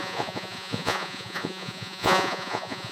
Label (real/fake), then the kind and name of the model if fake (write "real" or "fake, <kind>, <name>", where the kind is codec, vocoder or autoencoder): fake, vocoder, Vocos